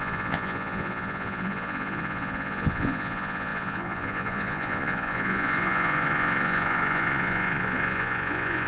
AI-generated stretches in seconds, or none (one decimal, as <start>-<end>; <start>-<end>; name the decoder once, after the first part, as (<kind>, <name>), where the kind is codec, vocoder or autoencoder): 0.0-8.7 (vocoder, Vocos)